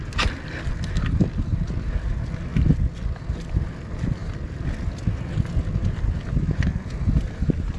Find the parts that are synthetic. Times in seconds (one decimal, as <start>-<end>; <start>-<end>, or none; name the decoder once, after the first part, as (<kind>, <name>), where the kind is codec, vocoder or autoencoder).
none